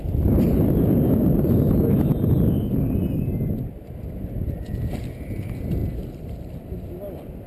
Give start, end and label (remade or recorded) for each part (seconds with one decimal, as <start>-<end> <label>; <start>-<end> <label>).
0.0-7.5 recorded